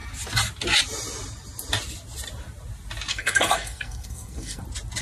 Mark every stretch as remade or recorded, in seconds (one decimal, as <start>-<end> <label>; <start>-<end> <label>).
0.0-3.1 recorded; 3.1-4.6 remade; 4.6-5.0 recorded